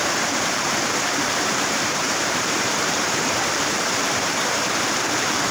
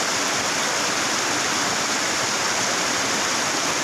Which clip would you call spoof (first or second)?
first